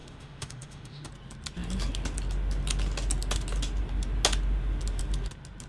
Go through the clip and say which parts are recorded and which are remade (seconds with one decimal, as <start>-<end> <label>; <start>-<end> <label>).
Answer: 0.0-1.1 remade; 1.1-5.7 recorded